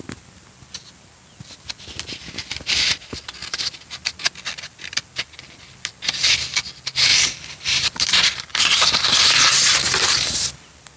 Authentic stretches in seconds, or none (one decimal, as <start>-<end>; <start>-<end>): 0.0-7.1; 8.1-8.5; 9.6-11.0